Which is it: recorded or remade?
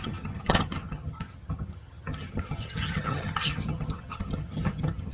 remade